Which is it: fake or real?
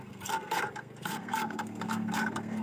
fake